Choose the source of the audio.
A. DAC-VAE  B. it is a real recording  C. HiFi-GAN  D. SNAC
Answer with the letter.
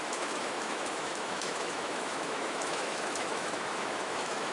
A